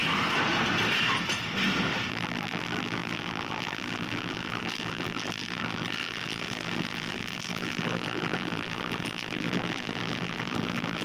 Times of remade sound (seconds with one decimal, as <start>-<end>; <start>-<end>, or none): 2.1-11.0